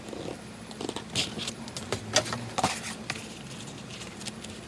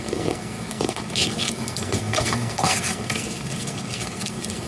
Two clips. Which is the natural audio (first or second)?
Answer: first